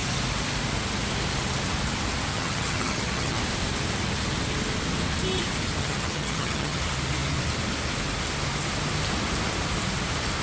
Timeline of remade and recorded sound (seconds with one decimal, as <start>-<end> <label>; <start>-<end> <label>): 0.0-2.3 recorded; 2.3-3.4 remade; 3.4-5.8 recorded; 5.8-6.8 remade; 6.8-10.4 recorded